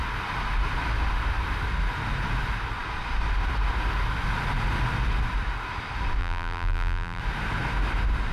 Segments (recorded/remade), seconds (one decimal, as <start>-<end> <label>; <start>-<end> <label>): 0.0-6.2 recorded; 6.2-7.2 remade; 7.2-8.3 recorded